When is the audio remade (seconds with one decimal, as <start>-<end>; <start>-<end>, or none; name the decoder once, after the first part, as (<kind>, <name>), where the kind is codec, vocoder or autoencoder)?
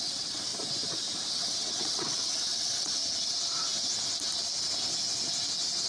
0.0-0.5 (vocoder, WaveNeXt); 1.3-3.0